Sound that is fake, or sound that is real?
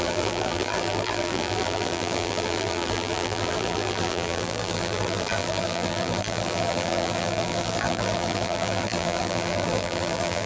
fake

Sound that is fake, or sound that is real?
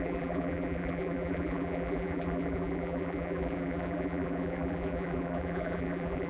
fake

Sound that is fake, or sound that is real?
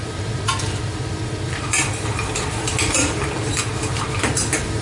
fake